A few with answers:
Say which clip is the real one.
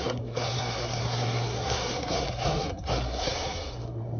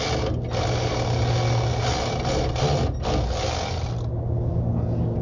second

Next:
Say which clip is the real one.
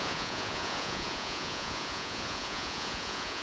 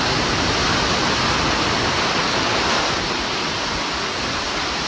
second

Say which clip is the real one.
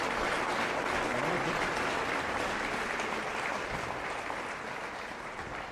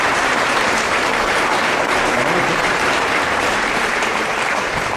first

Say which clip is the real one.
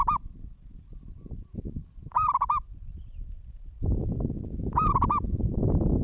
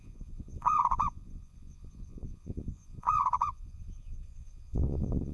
first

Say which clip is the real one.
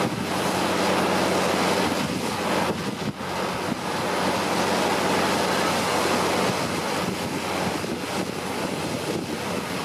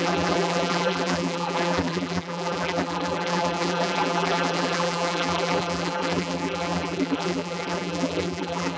first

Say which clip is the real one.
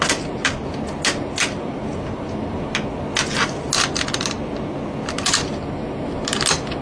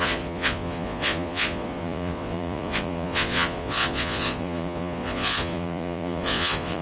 first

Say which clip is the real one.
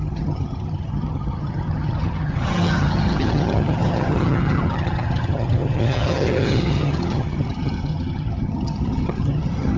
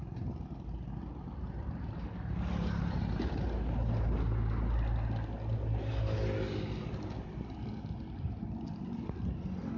second